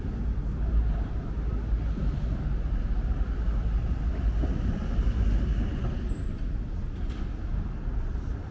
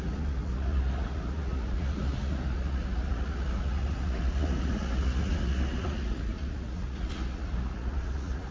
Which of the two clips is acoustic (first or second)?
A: first